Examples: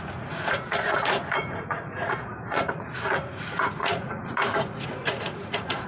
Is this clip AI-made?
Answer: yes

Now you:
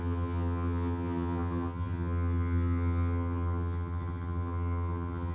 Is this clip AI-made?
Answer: yes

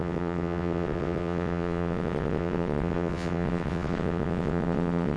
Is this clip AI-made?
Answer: yes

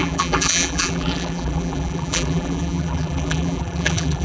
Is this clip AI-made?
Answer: yes